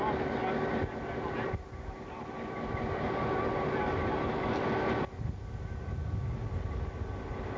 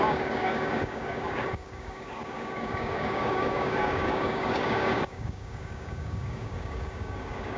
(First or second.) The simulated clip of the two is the second